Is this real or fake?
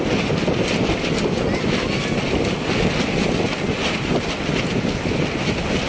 real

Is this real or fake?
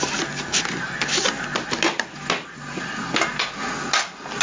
real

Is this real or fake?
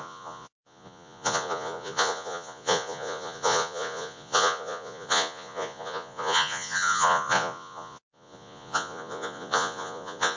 fake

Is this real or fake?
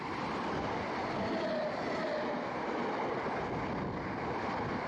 real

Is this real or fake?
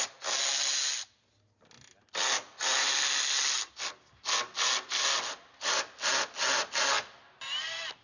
real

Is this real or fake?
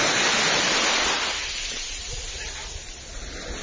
real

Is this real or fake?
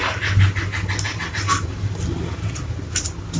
real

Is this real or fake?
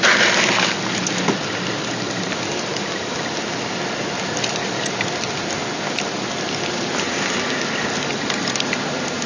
real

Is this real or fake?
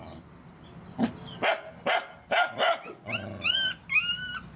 real